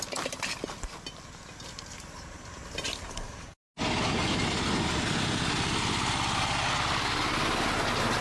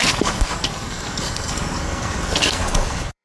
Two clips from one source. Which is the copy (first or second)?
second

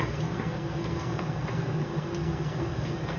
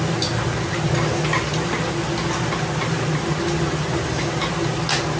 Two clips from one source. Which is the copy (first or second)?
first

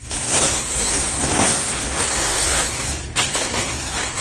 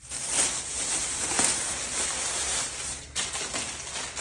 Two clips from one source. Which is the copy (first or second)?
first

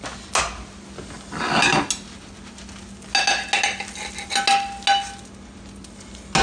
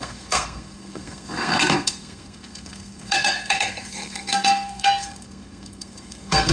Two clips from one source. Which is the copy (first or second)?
second